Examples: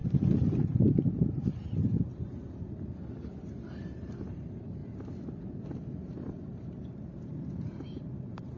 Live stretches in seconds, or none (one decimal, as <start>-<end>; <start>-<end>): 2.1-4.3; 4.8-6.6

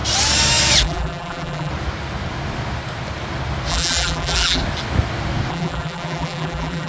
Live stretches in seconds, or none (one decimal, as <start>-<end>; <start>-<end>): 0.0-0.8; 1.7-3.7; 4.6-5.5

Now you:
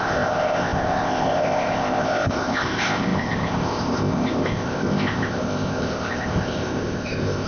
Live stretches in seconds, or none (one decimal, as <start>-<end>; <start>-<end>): none

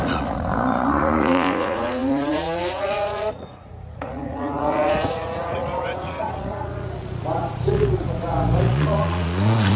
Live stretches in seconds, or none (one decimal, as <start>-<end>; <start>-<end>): none

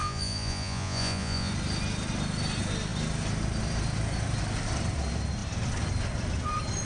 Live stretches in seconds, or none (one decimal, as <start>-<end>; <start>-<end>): 1.5-6.8

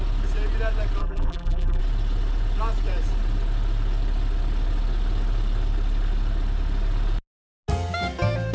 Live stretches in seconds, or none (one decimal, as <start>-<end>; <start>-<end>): 0.0-1.0; 1.8-8.5

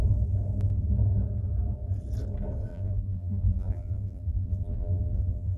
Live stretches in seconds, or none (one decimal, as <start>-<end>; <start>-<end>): 0.0-2.7